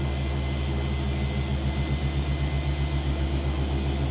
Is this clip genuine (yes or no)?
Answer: yes